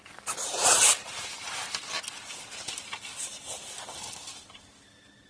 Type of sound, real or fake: real